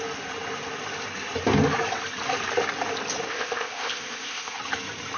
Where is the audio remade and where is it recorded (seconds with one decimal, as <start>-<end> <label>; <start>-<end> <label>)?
0.0-3.3 recorded; 3.3-4.6 remade; 4.6-5.2 recorded